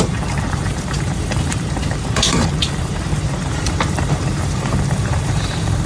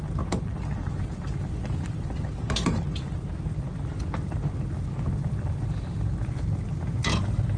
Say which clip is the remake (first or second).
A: first